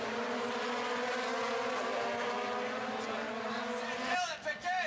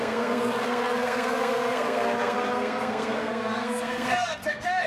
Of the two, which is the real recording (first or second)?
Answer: first